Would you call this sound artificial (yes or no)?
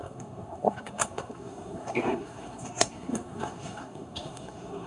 yes